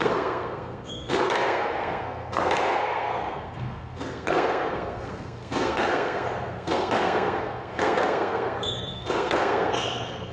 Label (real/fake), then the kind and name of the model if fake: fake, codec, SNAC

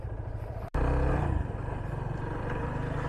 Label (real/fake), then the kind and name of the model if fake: real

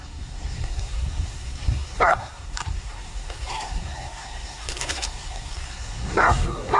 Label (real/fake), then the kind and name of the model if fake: fake, codec, SNAC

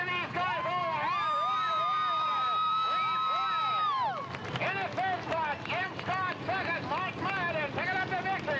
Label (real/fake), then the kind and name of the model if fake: real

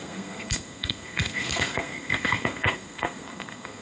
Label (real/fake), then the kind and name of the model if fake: fake, codec, SNAC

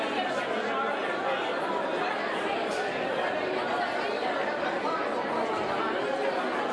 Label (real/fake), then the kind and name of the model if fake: real